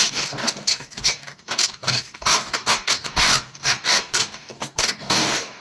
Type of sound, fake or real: fake